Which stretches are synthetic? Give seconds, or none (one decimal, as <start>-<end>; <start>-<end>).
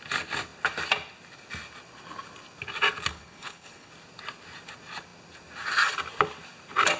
3.1-3.9